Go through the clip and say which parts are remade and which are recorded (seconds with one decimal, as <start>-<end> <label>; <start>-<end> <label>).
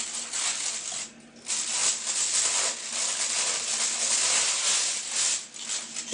0.0-6.1 recorded